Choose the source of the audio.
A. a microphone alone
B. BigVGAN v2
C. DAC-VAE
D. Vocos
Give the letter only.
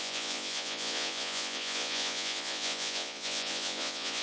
D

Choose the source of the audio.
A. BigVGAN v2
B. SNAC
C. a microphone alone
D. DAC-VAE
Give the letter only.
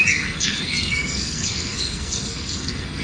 B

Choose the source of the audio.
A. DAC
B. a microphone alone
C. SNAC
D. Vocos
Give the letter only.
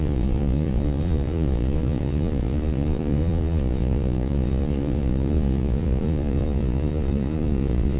D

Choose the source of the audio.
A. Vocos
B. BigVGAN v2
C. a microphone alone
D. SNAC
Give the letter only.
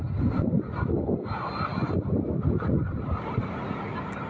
C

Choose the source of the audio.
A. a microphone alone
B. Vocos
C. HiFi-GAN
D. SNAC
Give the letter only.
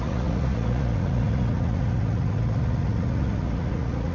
B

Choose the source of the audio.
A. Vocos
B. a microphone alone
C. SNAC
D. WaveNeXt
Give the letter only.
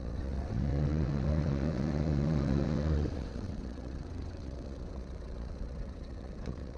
D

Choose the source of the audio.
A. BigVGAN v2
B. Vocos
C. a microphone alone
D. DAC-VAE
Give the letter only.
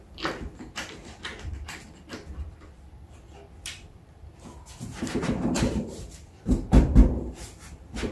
A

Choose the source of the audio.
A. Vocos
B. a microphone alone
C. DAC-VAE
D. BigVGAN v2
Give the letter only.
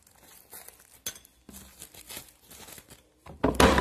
B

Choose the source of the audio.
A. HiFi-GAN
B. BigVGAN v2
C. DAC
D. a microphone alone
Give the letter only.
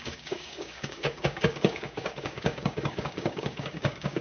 C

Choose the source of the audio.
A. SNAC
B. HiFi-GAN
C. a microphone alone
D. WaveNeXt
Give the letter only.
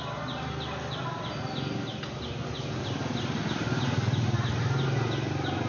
C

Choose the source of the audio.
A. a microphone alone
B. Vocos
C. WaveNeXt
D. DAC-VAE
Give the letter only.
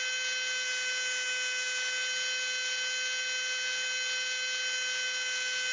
A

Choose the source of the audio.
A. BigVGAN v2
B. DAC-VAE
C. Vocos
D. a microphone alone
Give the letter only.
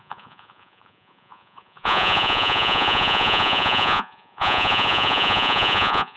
C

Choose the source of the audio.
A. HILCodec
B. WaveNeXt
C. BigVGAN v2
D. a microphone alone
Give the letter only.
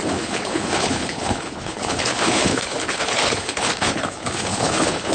A